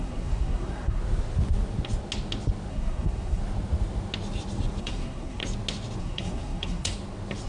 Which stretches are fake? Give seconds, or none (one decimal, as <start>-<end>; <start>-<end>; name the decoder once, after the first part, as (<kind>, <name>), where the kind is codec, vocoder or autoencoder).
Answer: 0.0-1.0 (codec, SNAC); 2.7-3.4; 4.8-5.4; 6.0-6.9